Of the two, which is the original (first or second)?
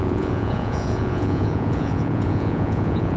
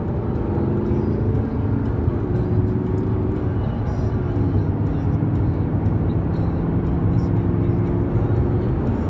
second